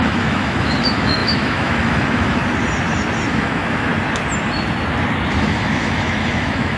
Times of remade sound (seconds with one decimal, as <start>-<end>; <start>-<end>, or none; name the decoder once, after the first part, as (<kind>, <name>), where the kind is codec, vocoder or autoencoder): 0.0-2.4 (autoencoder, DAC-VAE); 3.3-3.9; 5.4-6.8